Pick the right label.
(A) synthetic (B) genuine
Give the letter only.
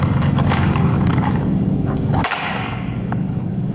A